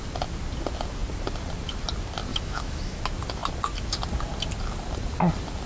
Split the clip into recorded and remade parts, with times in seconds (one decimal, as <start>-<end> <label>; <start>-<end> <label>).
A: 0.0-2.3 recorded; 2.3-3.0 remade; 3.0-5.7 recorded